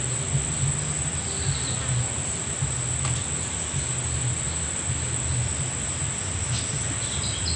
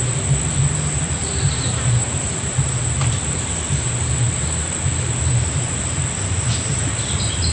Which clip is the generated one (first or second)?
second